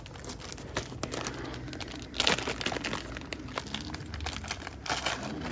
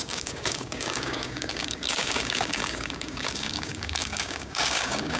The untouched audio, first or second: first